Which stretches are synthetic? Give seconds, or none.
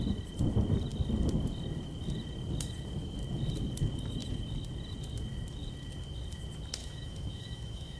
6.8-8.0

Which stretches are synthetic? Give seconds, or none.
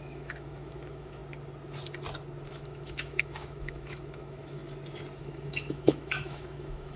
0.0-1.2; 2.5-4.6; 5.2-7.0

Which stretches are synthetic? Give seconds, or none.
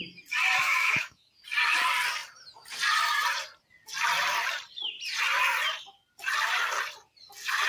0.6-1.3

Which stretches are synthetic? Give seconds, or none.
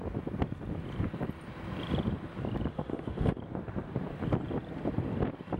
2.7-3.4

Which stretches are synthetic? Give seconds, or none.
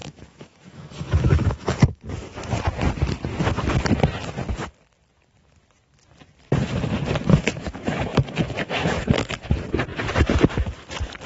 0.0-2.1; 7.3-9.5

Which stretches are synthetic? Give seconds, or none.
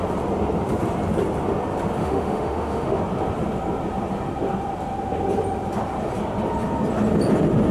2.0-3.0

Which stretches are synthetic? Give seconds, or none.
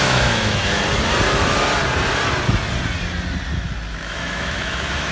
0.0-0.8; 3.9-5.1